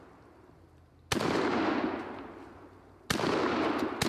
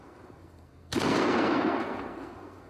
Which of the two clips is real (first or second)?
first